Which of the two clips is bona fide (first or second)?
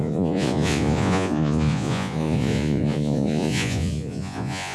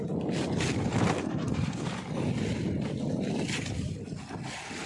second